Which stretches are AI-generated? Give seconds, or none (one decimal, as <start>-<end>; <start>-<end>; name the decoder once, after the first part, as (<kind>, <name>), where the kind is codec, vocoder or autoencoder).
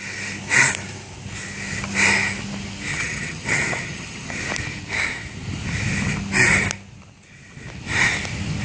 2.9-4.4 (vocoder, HiFi-GAN)